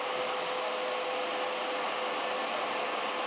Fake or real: real